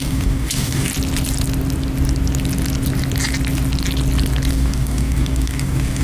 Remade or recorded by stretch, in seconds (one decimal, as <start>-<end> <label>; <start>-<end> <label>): 0.0-0.9 remade; 0.9-4.5 recorded; 4.5-6.0 remade